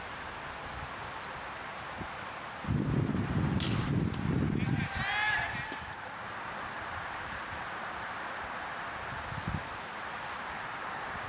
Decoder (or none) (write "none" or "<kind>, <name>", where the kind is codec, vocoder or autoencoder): none